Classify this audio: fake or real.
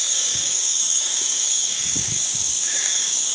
fake